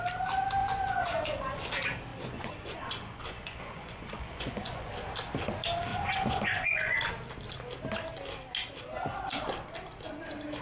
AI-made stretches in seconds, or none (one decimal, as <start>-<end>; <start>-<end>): 0.6-1.7; 2.1-4.9; 5.9-7.1